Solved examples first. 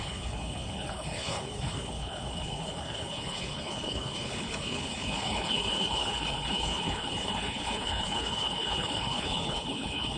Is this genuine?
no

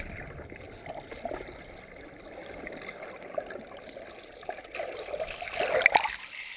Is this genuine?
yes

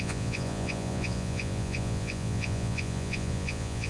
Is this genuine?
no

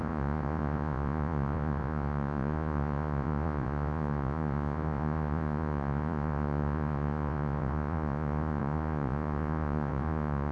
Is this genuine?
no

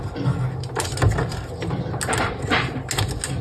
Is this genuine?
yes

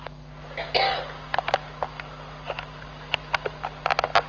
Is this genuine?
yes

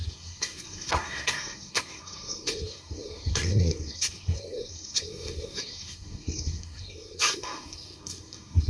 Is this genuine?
no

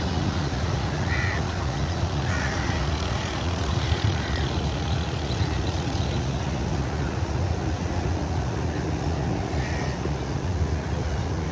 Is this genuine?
no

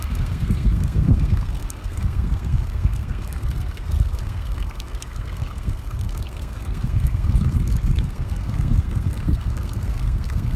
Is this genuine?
no